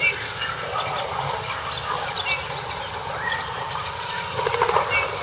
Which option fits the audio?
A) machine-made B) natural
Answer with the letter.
B